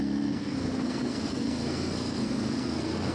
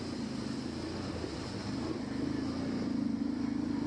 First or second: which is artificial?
first